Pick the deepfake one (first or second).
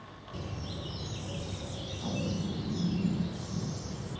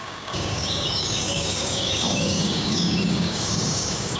second